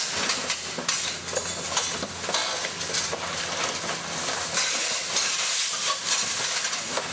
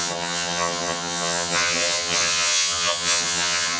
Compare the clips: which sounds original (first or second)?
first